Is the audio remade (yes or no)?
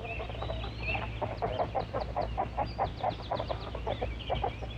no